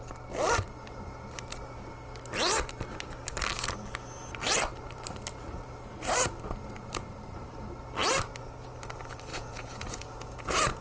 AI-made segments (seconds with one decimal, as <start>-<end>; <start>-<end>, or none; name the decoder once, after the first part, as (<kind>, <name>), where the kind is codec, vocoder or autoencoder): 9.3-10.8 (vocoder, Vocos)